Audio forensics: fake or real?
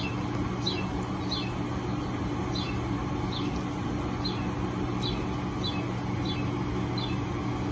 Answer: real